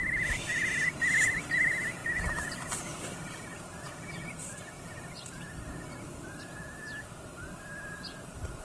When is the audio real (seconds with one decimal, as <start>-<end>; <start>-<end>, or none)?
0.0-8.6